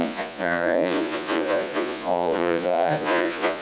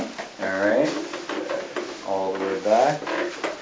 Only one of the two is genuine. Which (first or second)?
second